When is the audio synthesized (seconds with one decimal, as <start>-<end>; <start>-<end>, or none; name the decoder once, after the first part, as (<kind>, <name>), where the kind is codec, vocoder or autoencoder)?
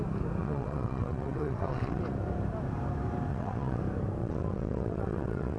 0.4-2.0 (vocoder, WaveNeXt); 3.3-3.8; 4.2-5.6